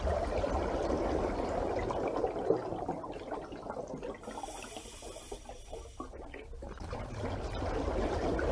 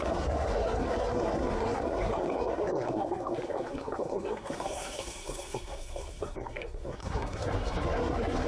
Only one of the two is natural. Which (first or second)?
first